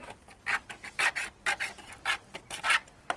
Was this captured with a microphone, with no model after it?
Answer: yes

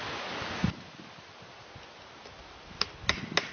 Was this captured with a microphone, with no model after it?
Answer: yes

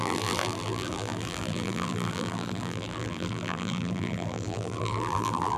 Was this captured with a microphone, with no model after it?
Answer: no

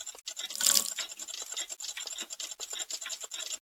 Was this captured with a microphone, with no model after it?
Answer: yes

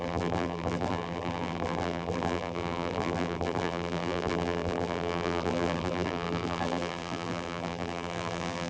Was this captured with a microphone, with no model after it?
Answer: no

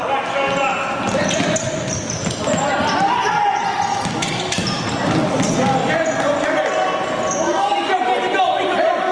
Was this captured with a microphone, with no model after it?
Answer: yes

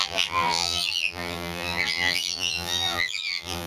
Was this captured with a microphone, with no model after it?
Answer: no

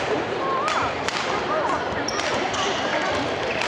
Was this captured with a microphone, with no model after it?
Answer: no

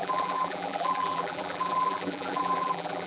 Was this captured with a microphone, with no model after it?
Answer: no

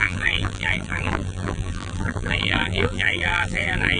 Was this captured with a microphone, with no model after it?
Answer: no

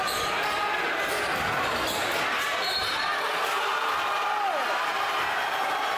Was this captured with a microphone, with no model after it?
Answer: yes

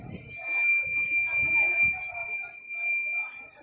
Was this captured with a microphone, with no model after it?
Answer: yes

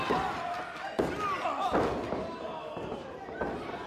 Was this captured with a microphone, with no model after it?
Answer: yes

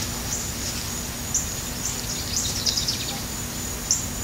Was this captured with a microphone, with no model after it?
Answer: yes